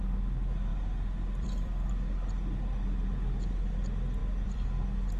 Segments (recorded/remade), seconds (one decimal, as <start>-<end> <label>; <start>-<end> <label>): 0.0-0.7 recorded; 0.7-1.9 remade; 1.9-4.2 recorded; 4.2-5.2 remade